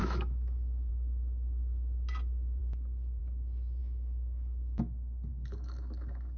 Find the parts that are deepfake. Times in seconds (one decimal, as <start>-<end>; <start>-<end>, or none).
0.0-0.9; 3.8-4.8; 5.3-6.4